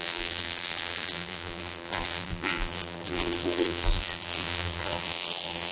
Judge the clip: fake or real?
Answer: fake